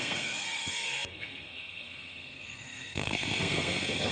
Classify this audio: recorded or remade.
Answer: remade